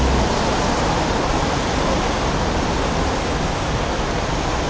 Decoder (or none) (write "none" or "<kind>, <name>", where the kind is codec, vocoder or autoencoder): none